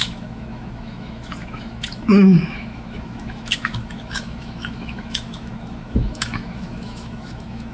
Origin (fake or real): fake